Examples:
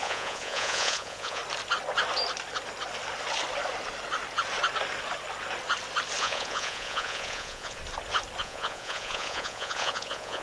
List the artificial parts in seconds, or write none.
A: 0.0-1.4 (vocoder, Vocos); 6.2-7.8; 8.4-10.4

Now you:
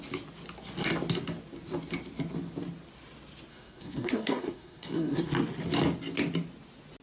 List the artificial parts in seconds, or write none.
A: 3.5-5.3 (codec, SNAC)

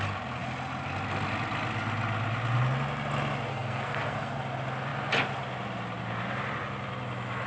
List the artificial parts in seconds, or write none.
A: 3.5-4.4 (codec, SNAC)

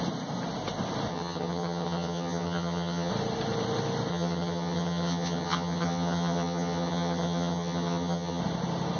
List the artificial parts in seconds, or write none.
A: 1.1-3.1 (vocoder, HiFi-GAN); 4.1-8.4